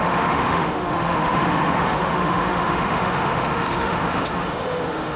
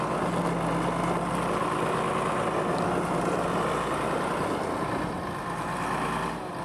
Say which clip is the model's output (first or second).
first